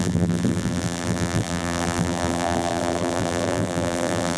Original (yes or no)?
no